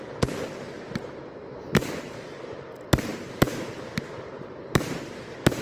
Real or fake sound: fake